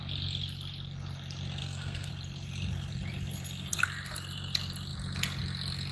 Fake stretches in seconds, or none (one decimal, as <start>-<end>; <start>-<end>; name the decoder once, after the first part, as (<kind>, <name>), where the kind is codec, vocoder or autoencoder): 1.6-2.1 (codec, SNAC)